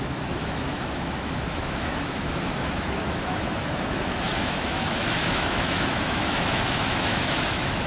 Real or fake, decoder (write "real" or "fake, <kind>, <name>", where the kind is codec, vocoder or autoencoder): fake, autoencoder, DAC-VAE